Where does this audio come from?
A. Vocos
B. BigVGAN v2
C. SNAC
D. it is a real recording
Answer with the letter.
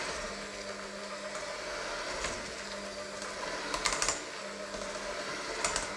D